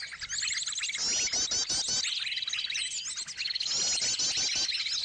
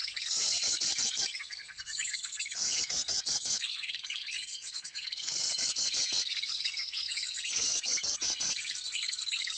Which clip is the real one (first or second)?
first